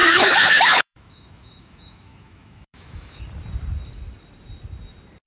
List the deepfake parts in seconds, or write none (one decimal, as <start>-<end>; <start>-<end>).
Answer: 0.0-3.2